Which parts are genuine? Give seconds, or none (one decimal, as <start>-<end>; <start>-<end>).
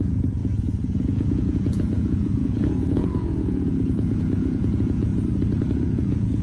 5.1-5.8